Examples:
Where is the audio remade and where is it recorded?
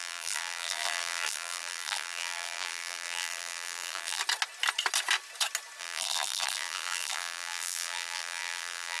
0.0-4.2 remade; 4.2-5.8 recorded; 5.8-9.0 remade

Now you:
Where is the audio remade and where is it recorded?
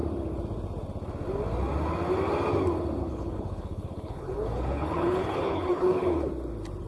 0.0-3.0 recorded; 3.0-6.3 remade; 6.3-6.9 recorded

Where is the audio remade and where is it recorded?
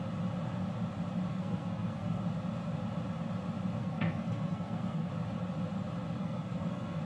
0.0-1.3 recorded; 1.3-2.2 remade; 2.2-3.8 recorded; 3.8-5.1 remade; 5.1-6.2 recorded; 6.2-7.0 remade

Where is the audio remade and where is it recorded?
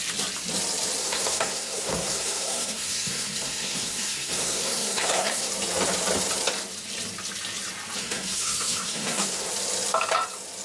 0.0-1.0 recorded; 1.0-5.5 remade; 5.5-8.0 recorded; 8.0-9.5 remade; 9.5-10.6 recorded